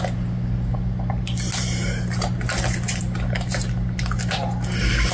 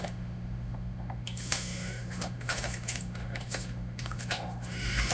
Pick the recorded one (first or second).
first